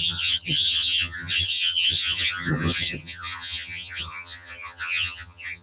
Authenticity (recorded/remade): remade